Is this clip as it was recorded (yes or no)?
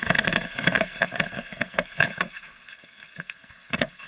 no